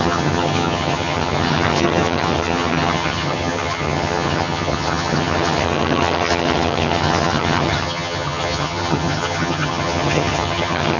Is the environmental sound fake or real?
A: fake